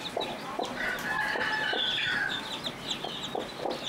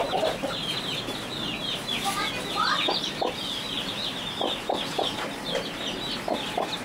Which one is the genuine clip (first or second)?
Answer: second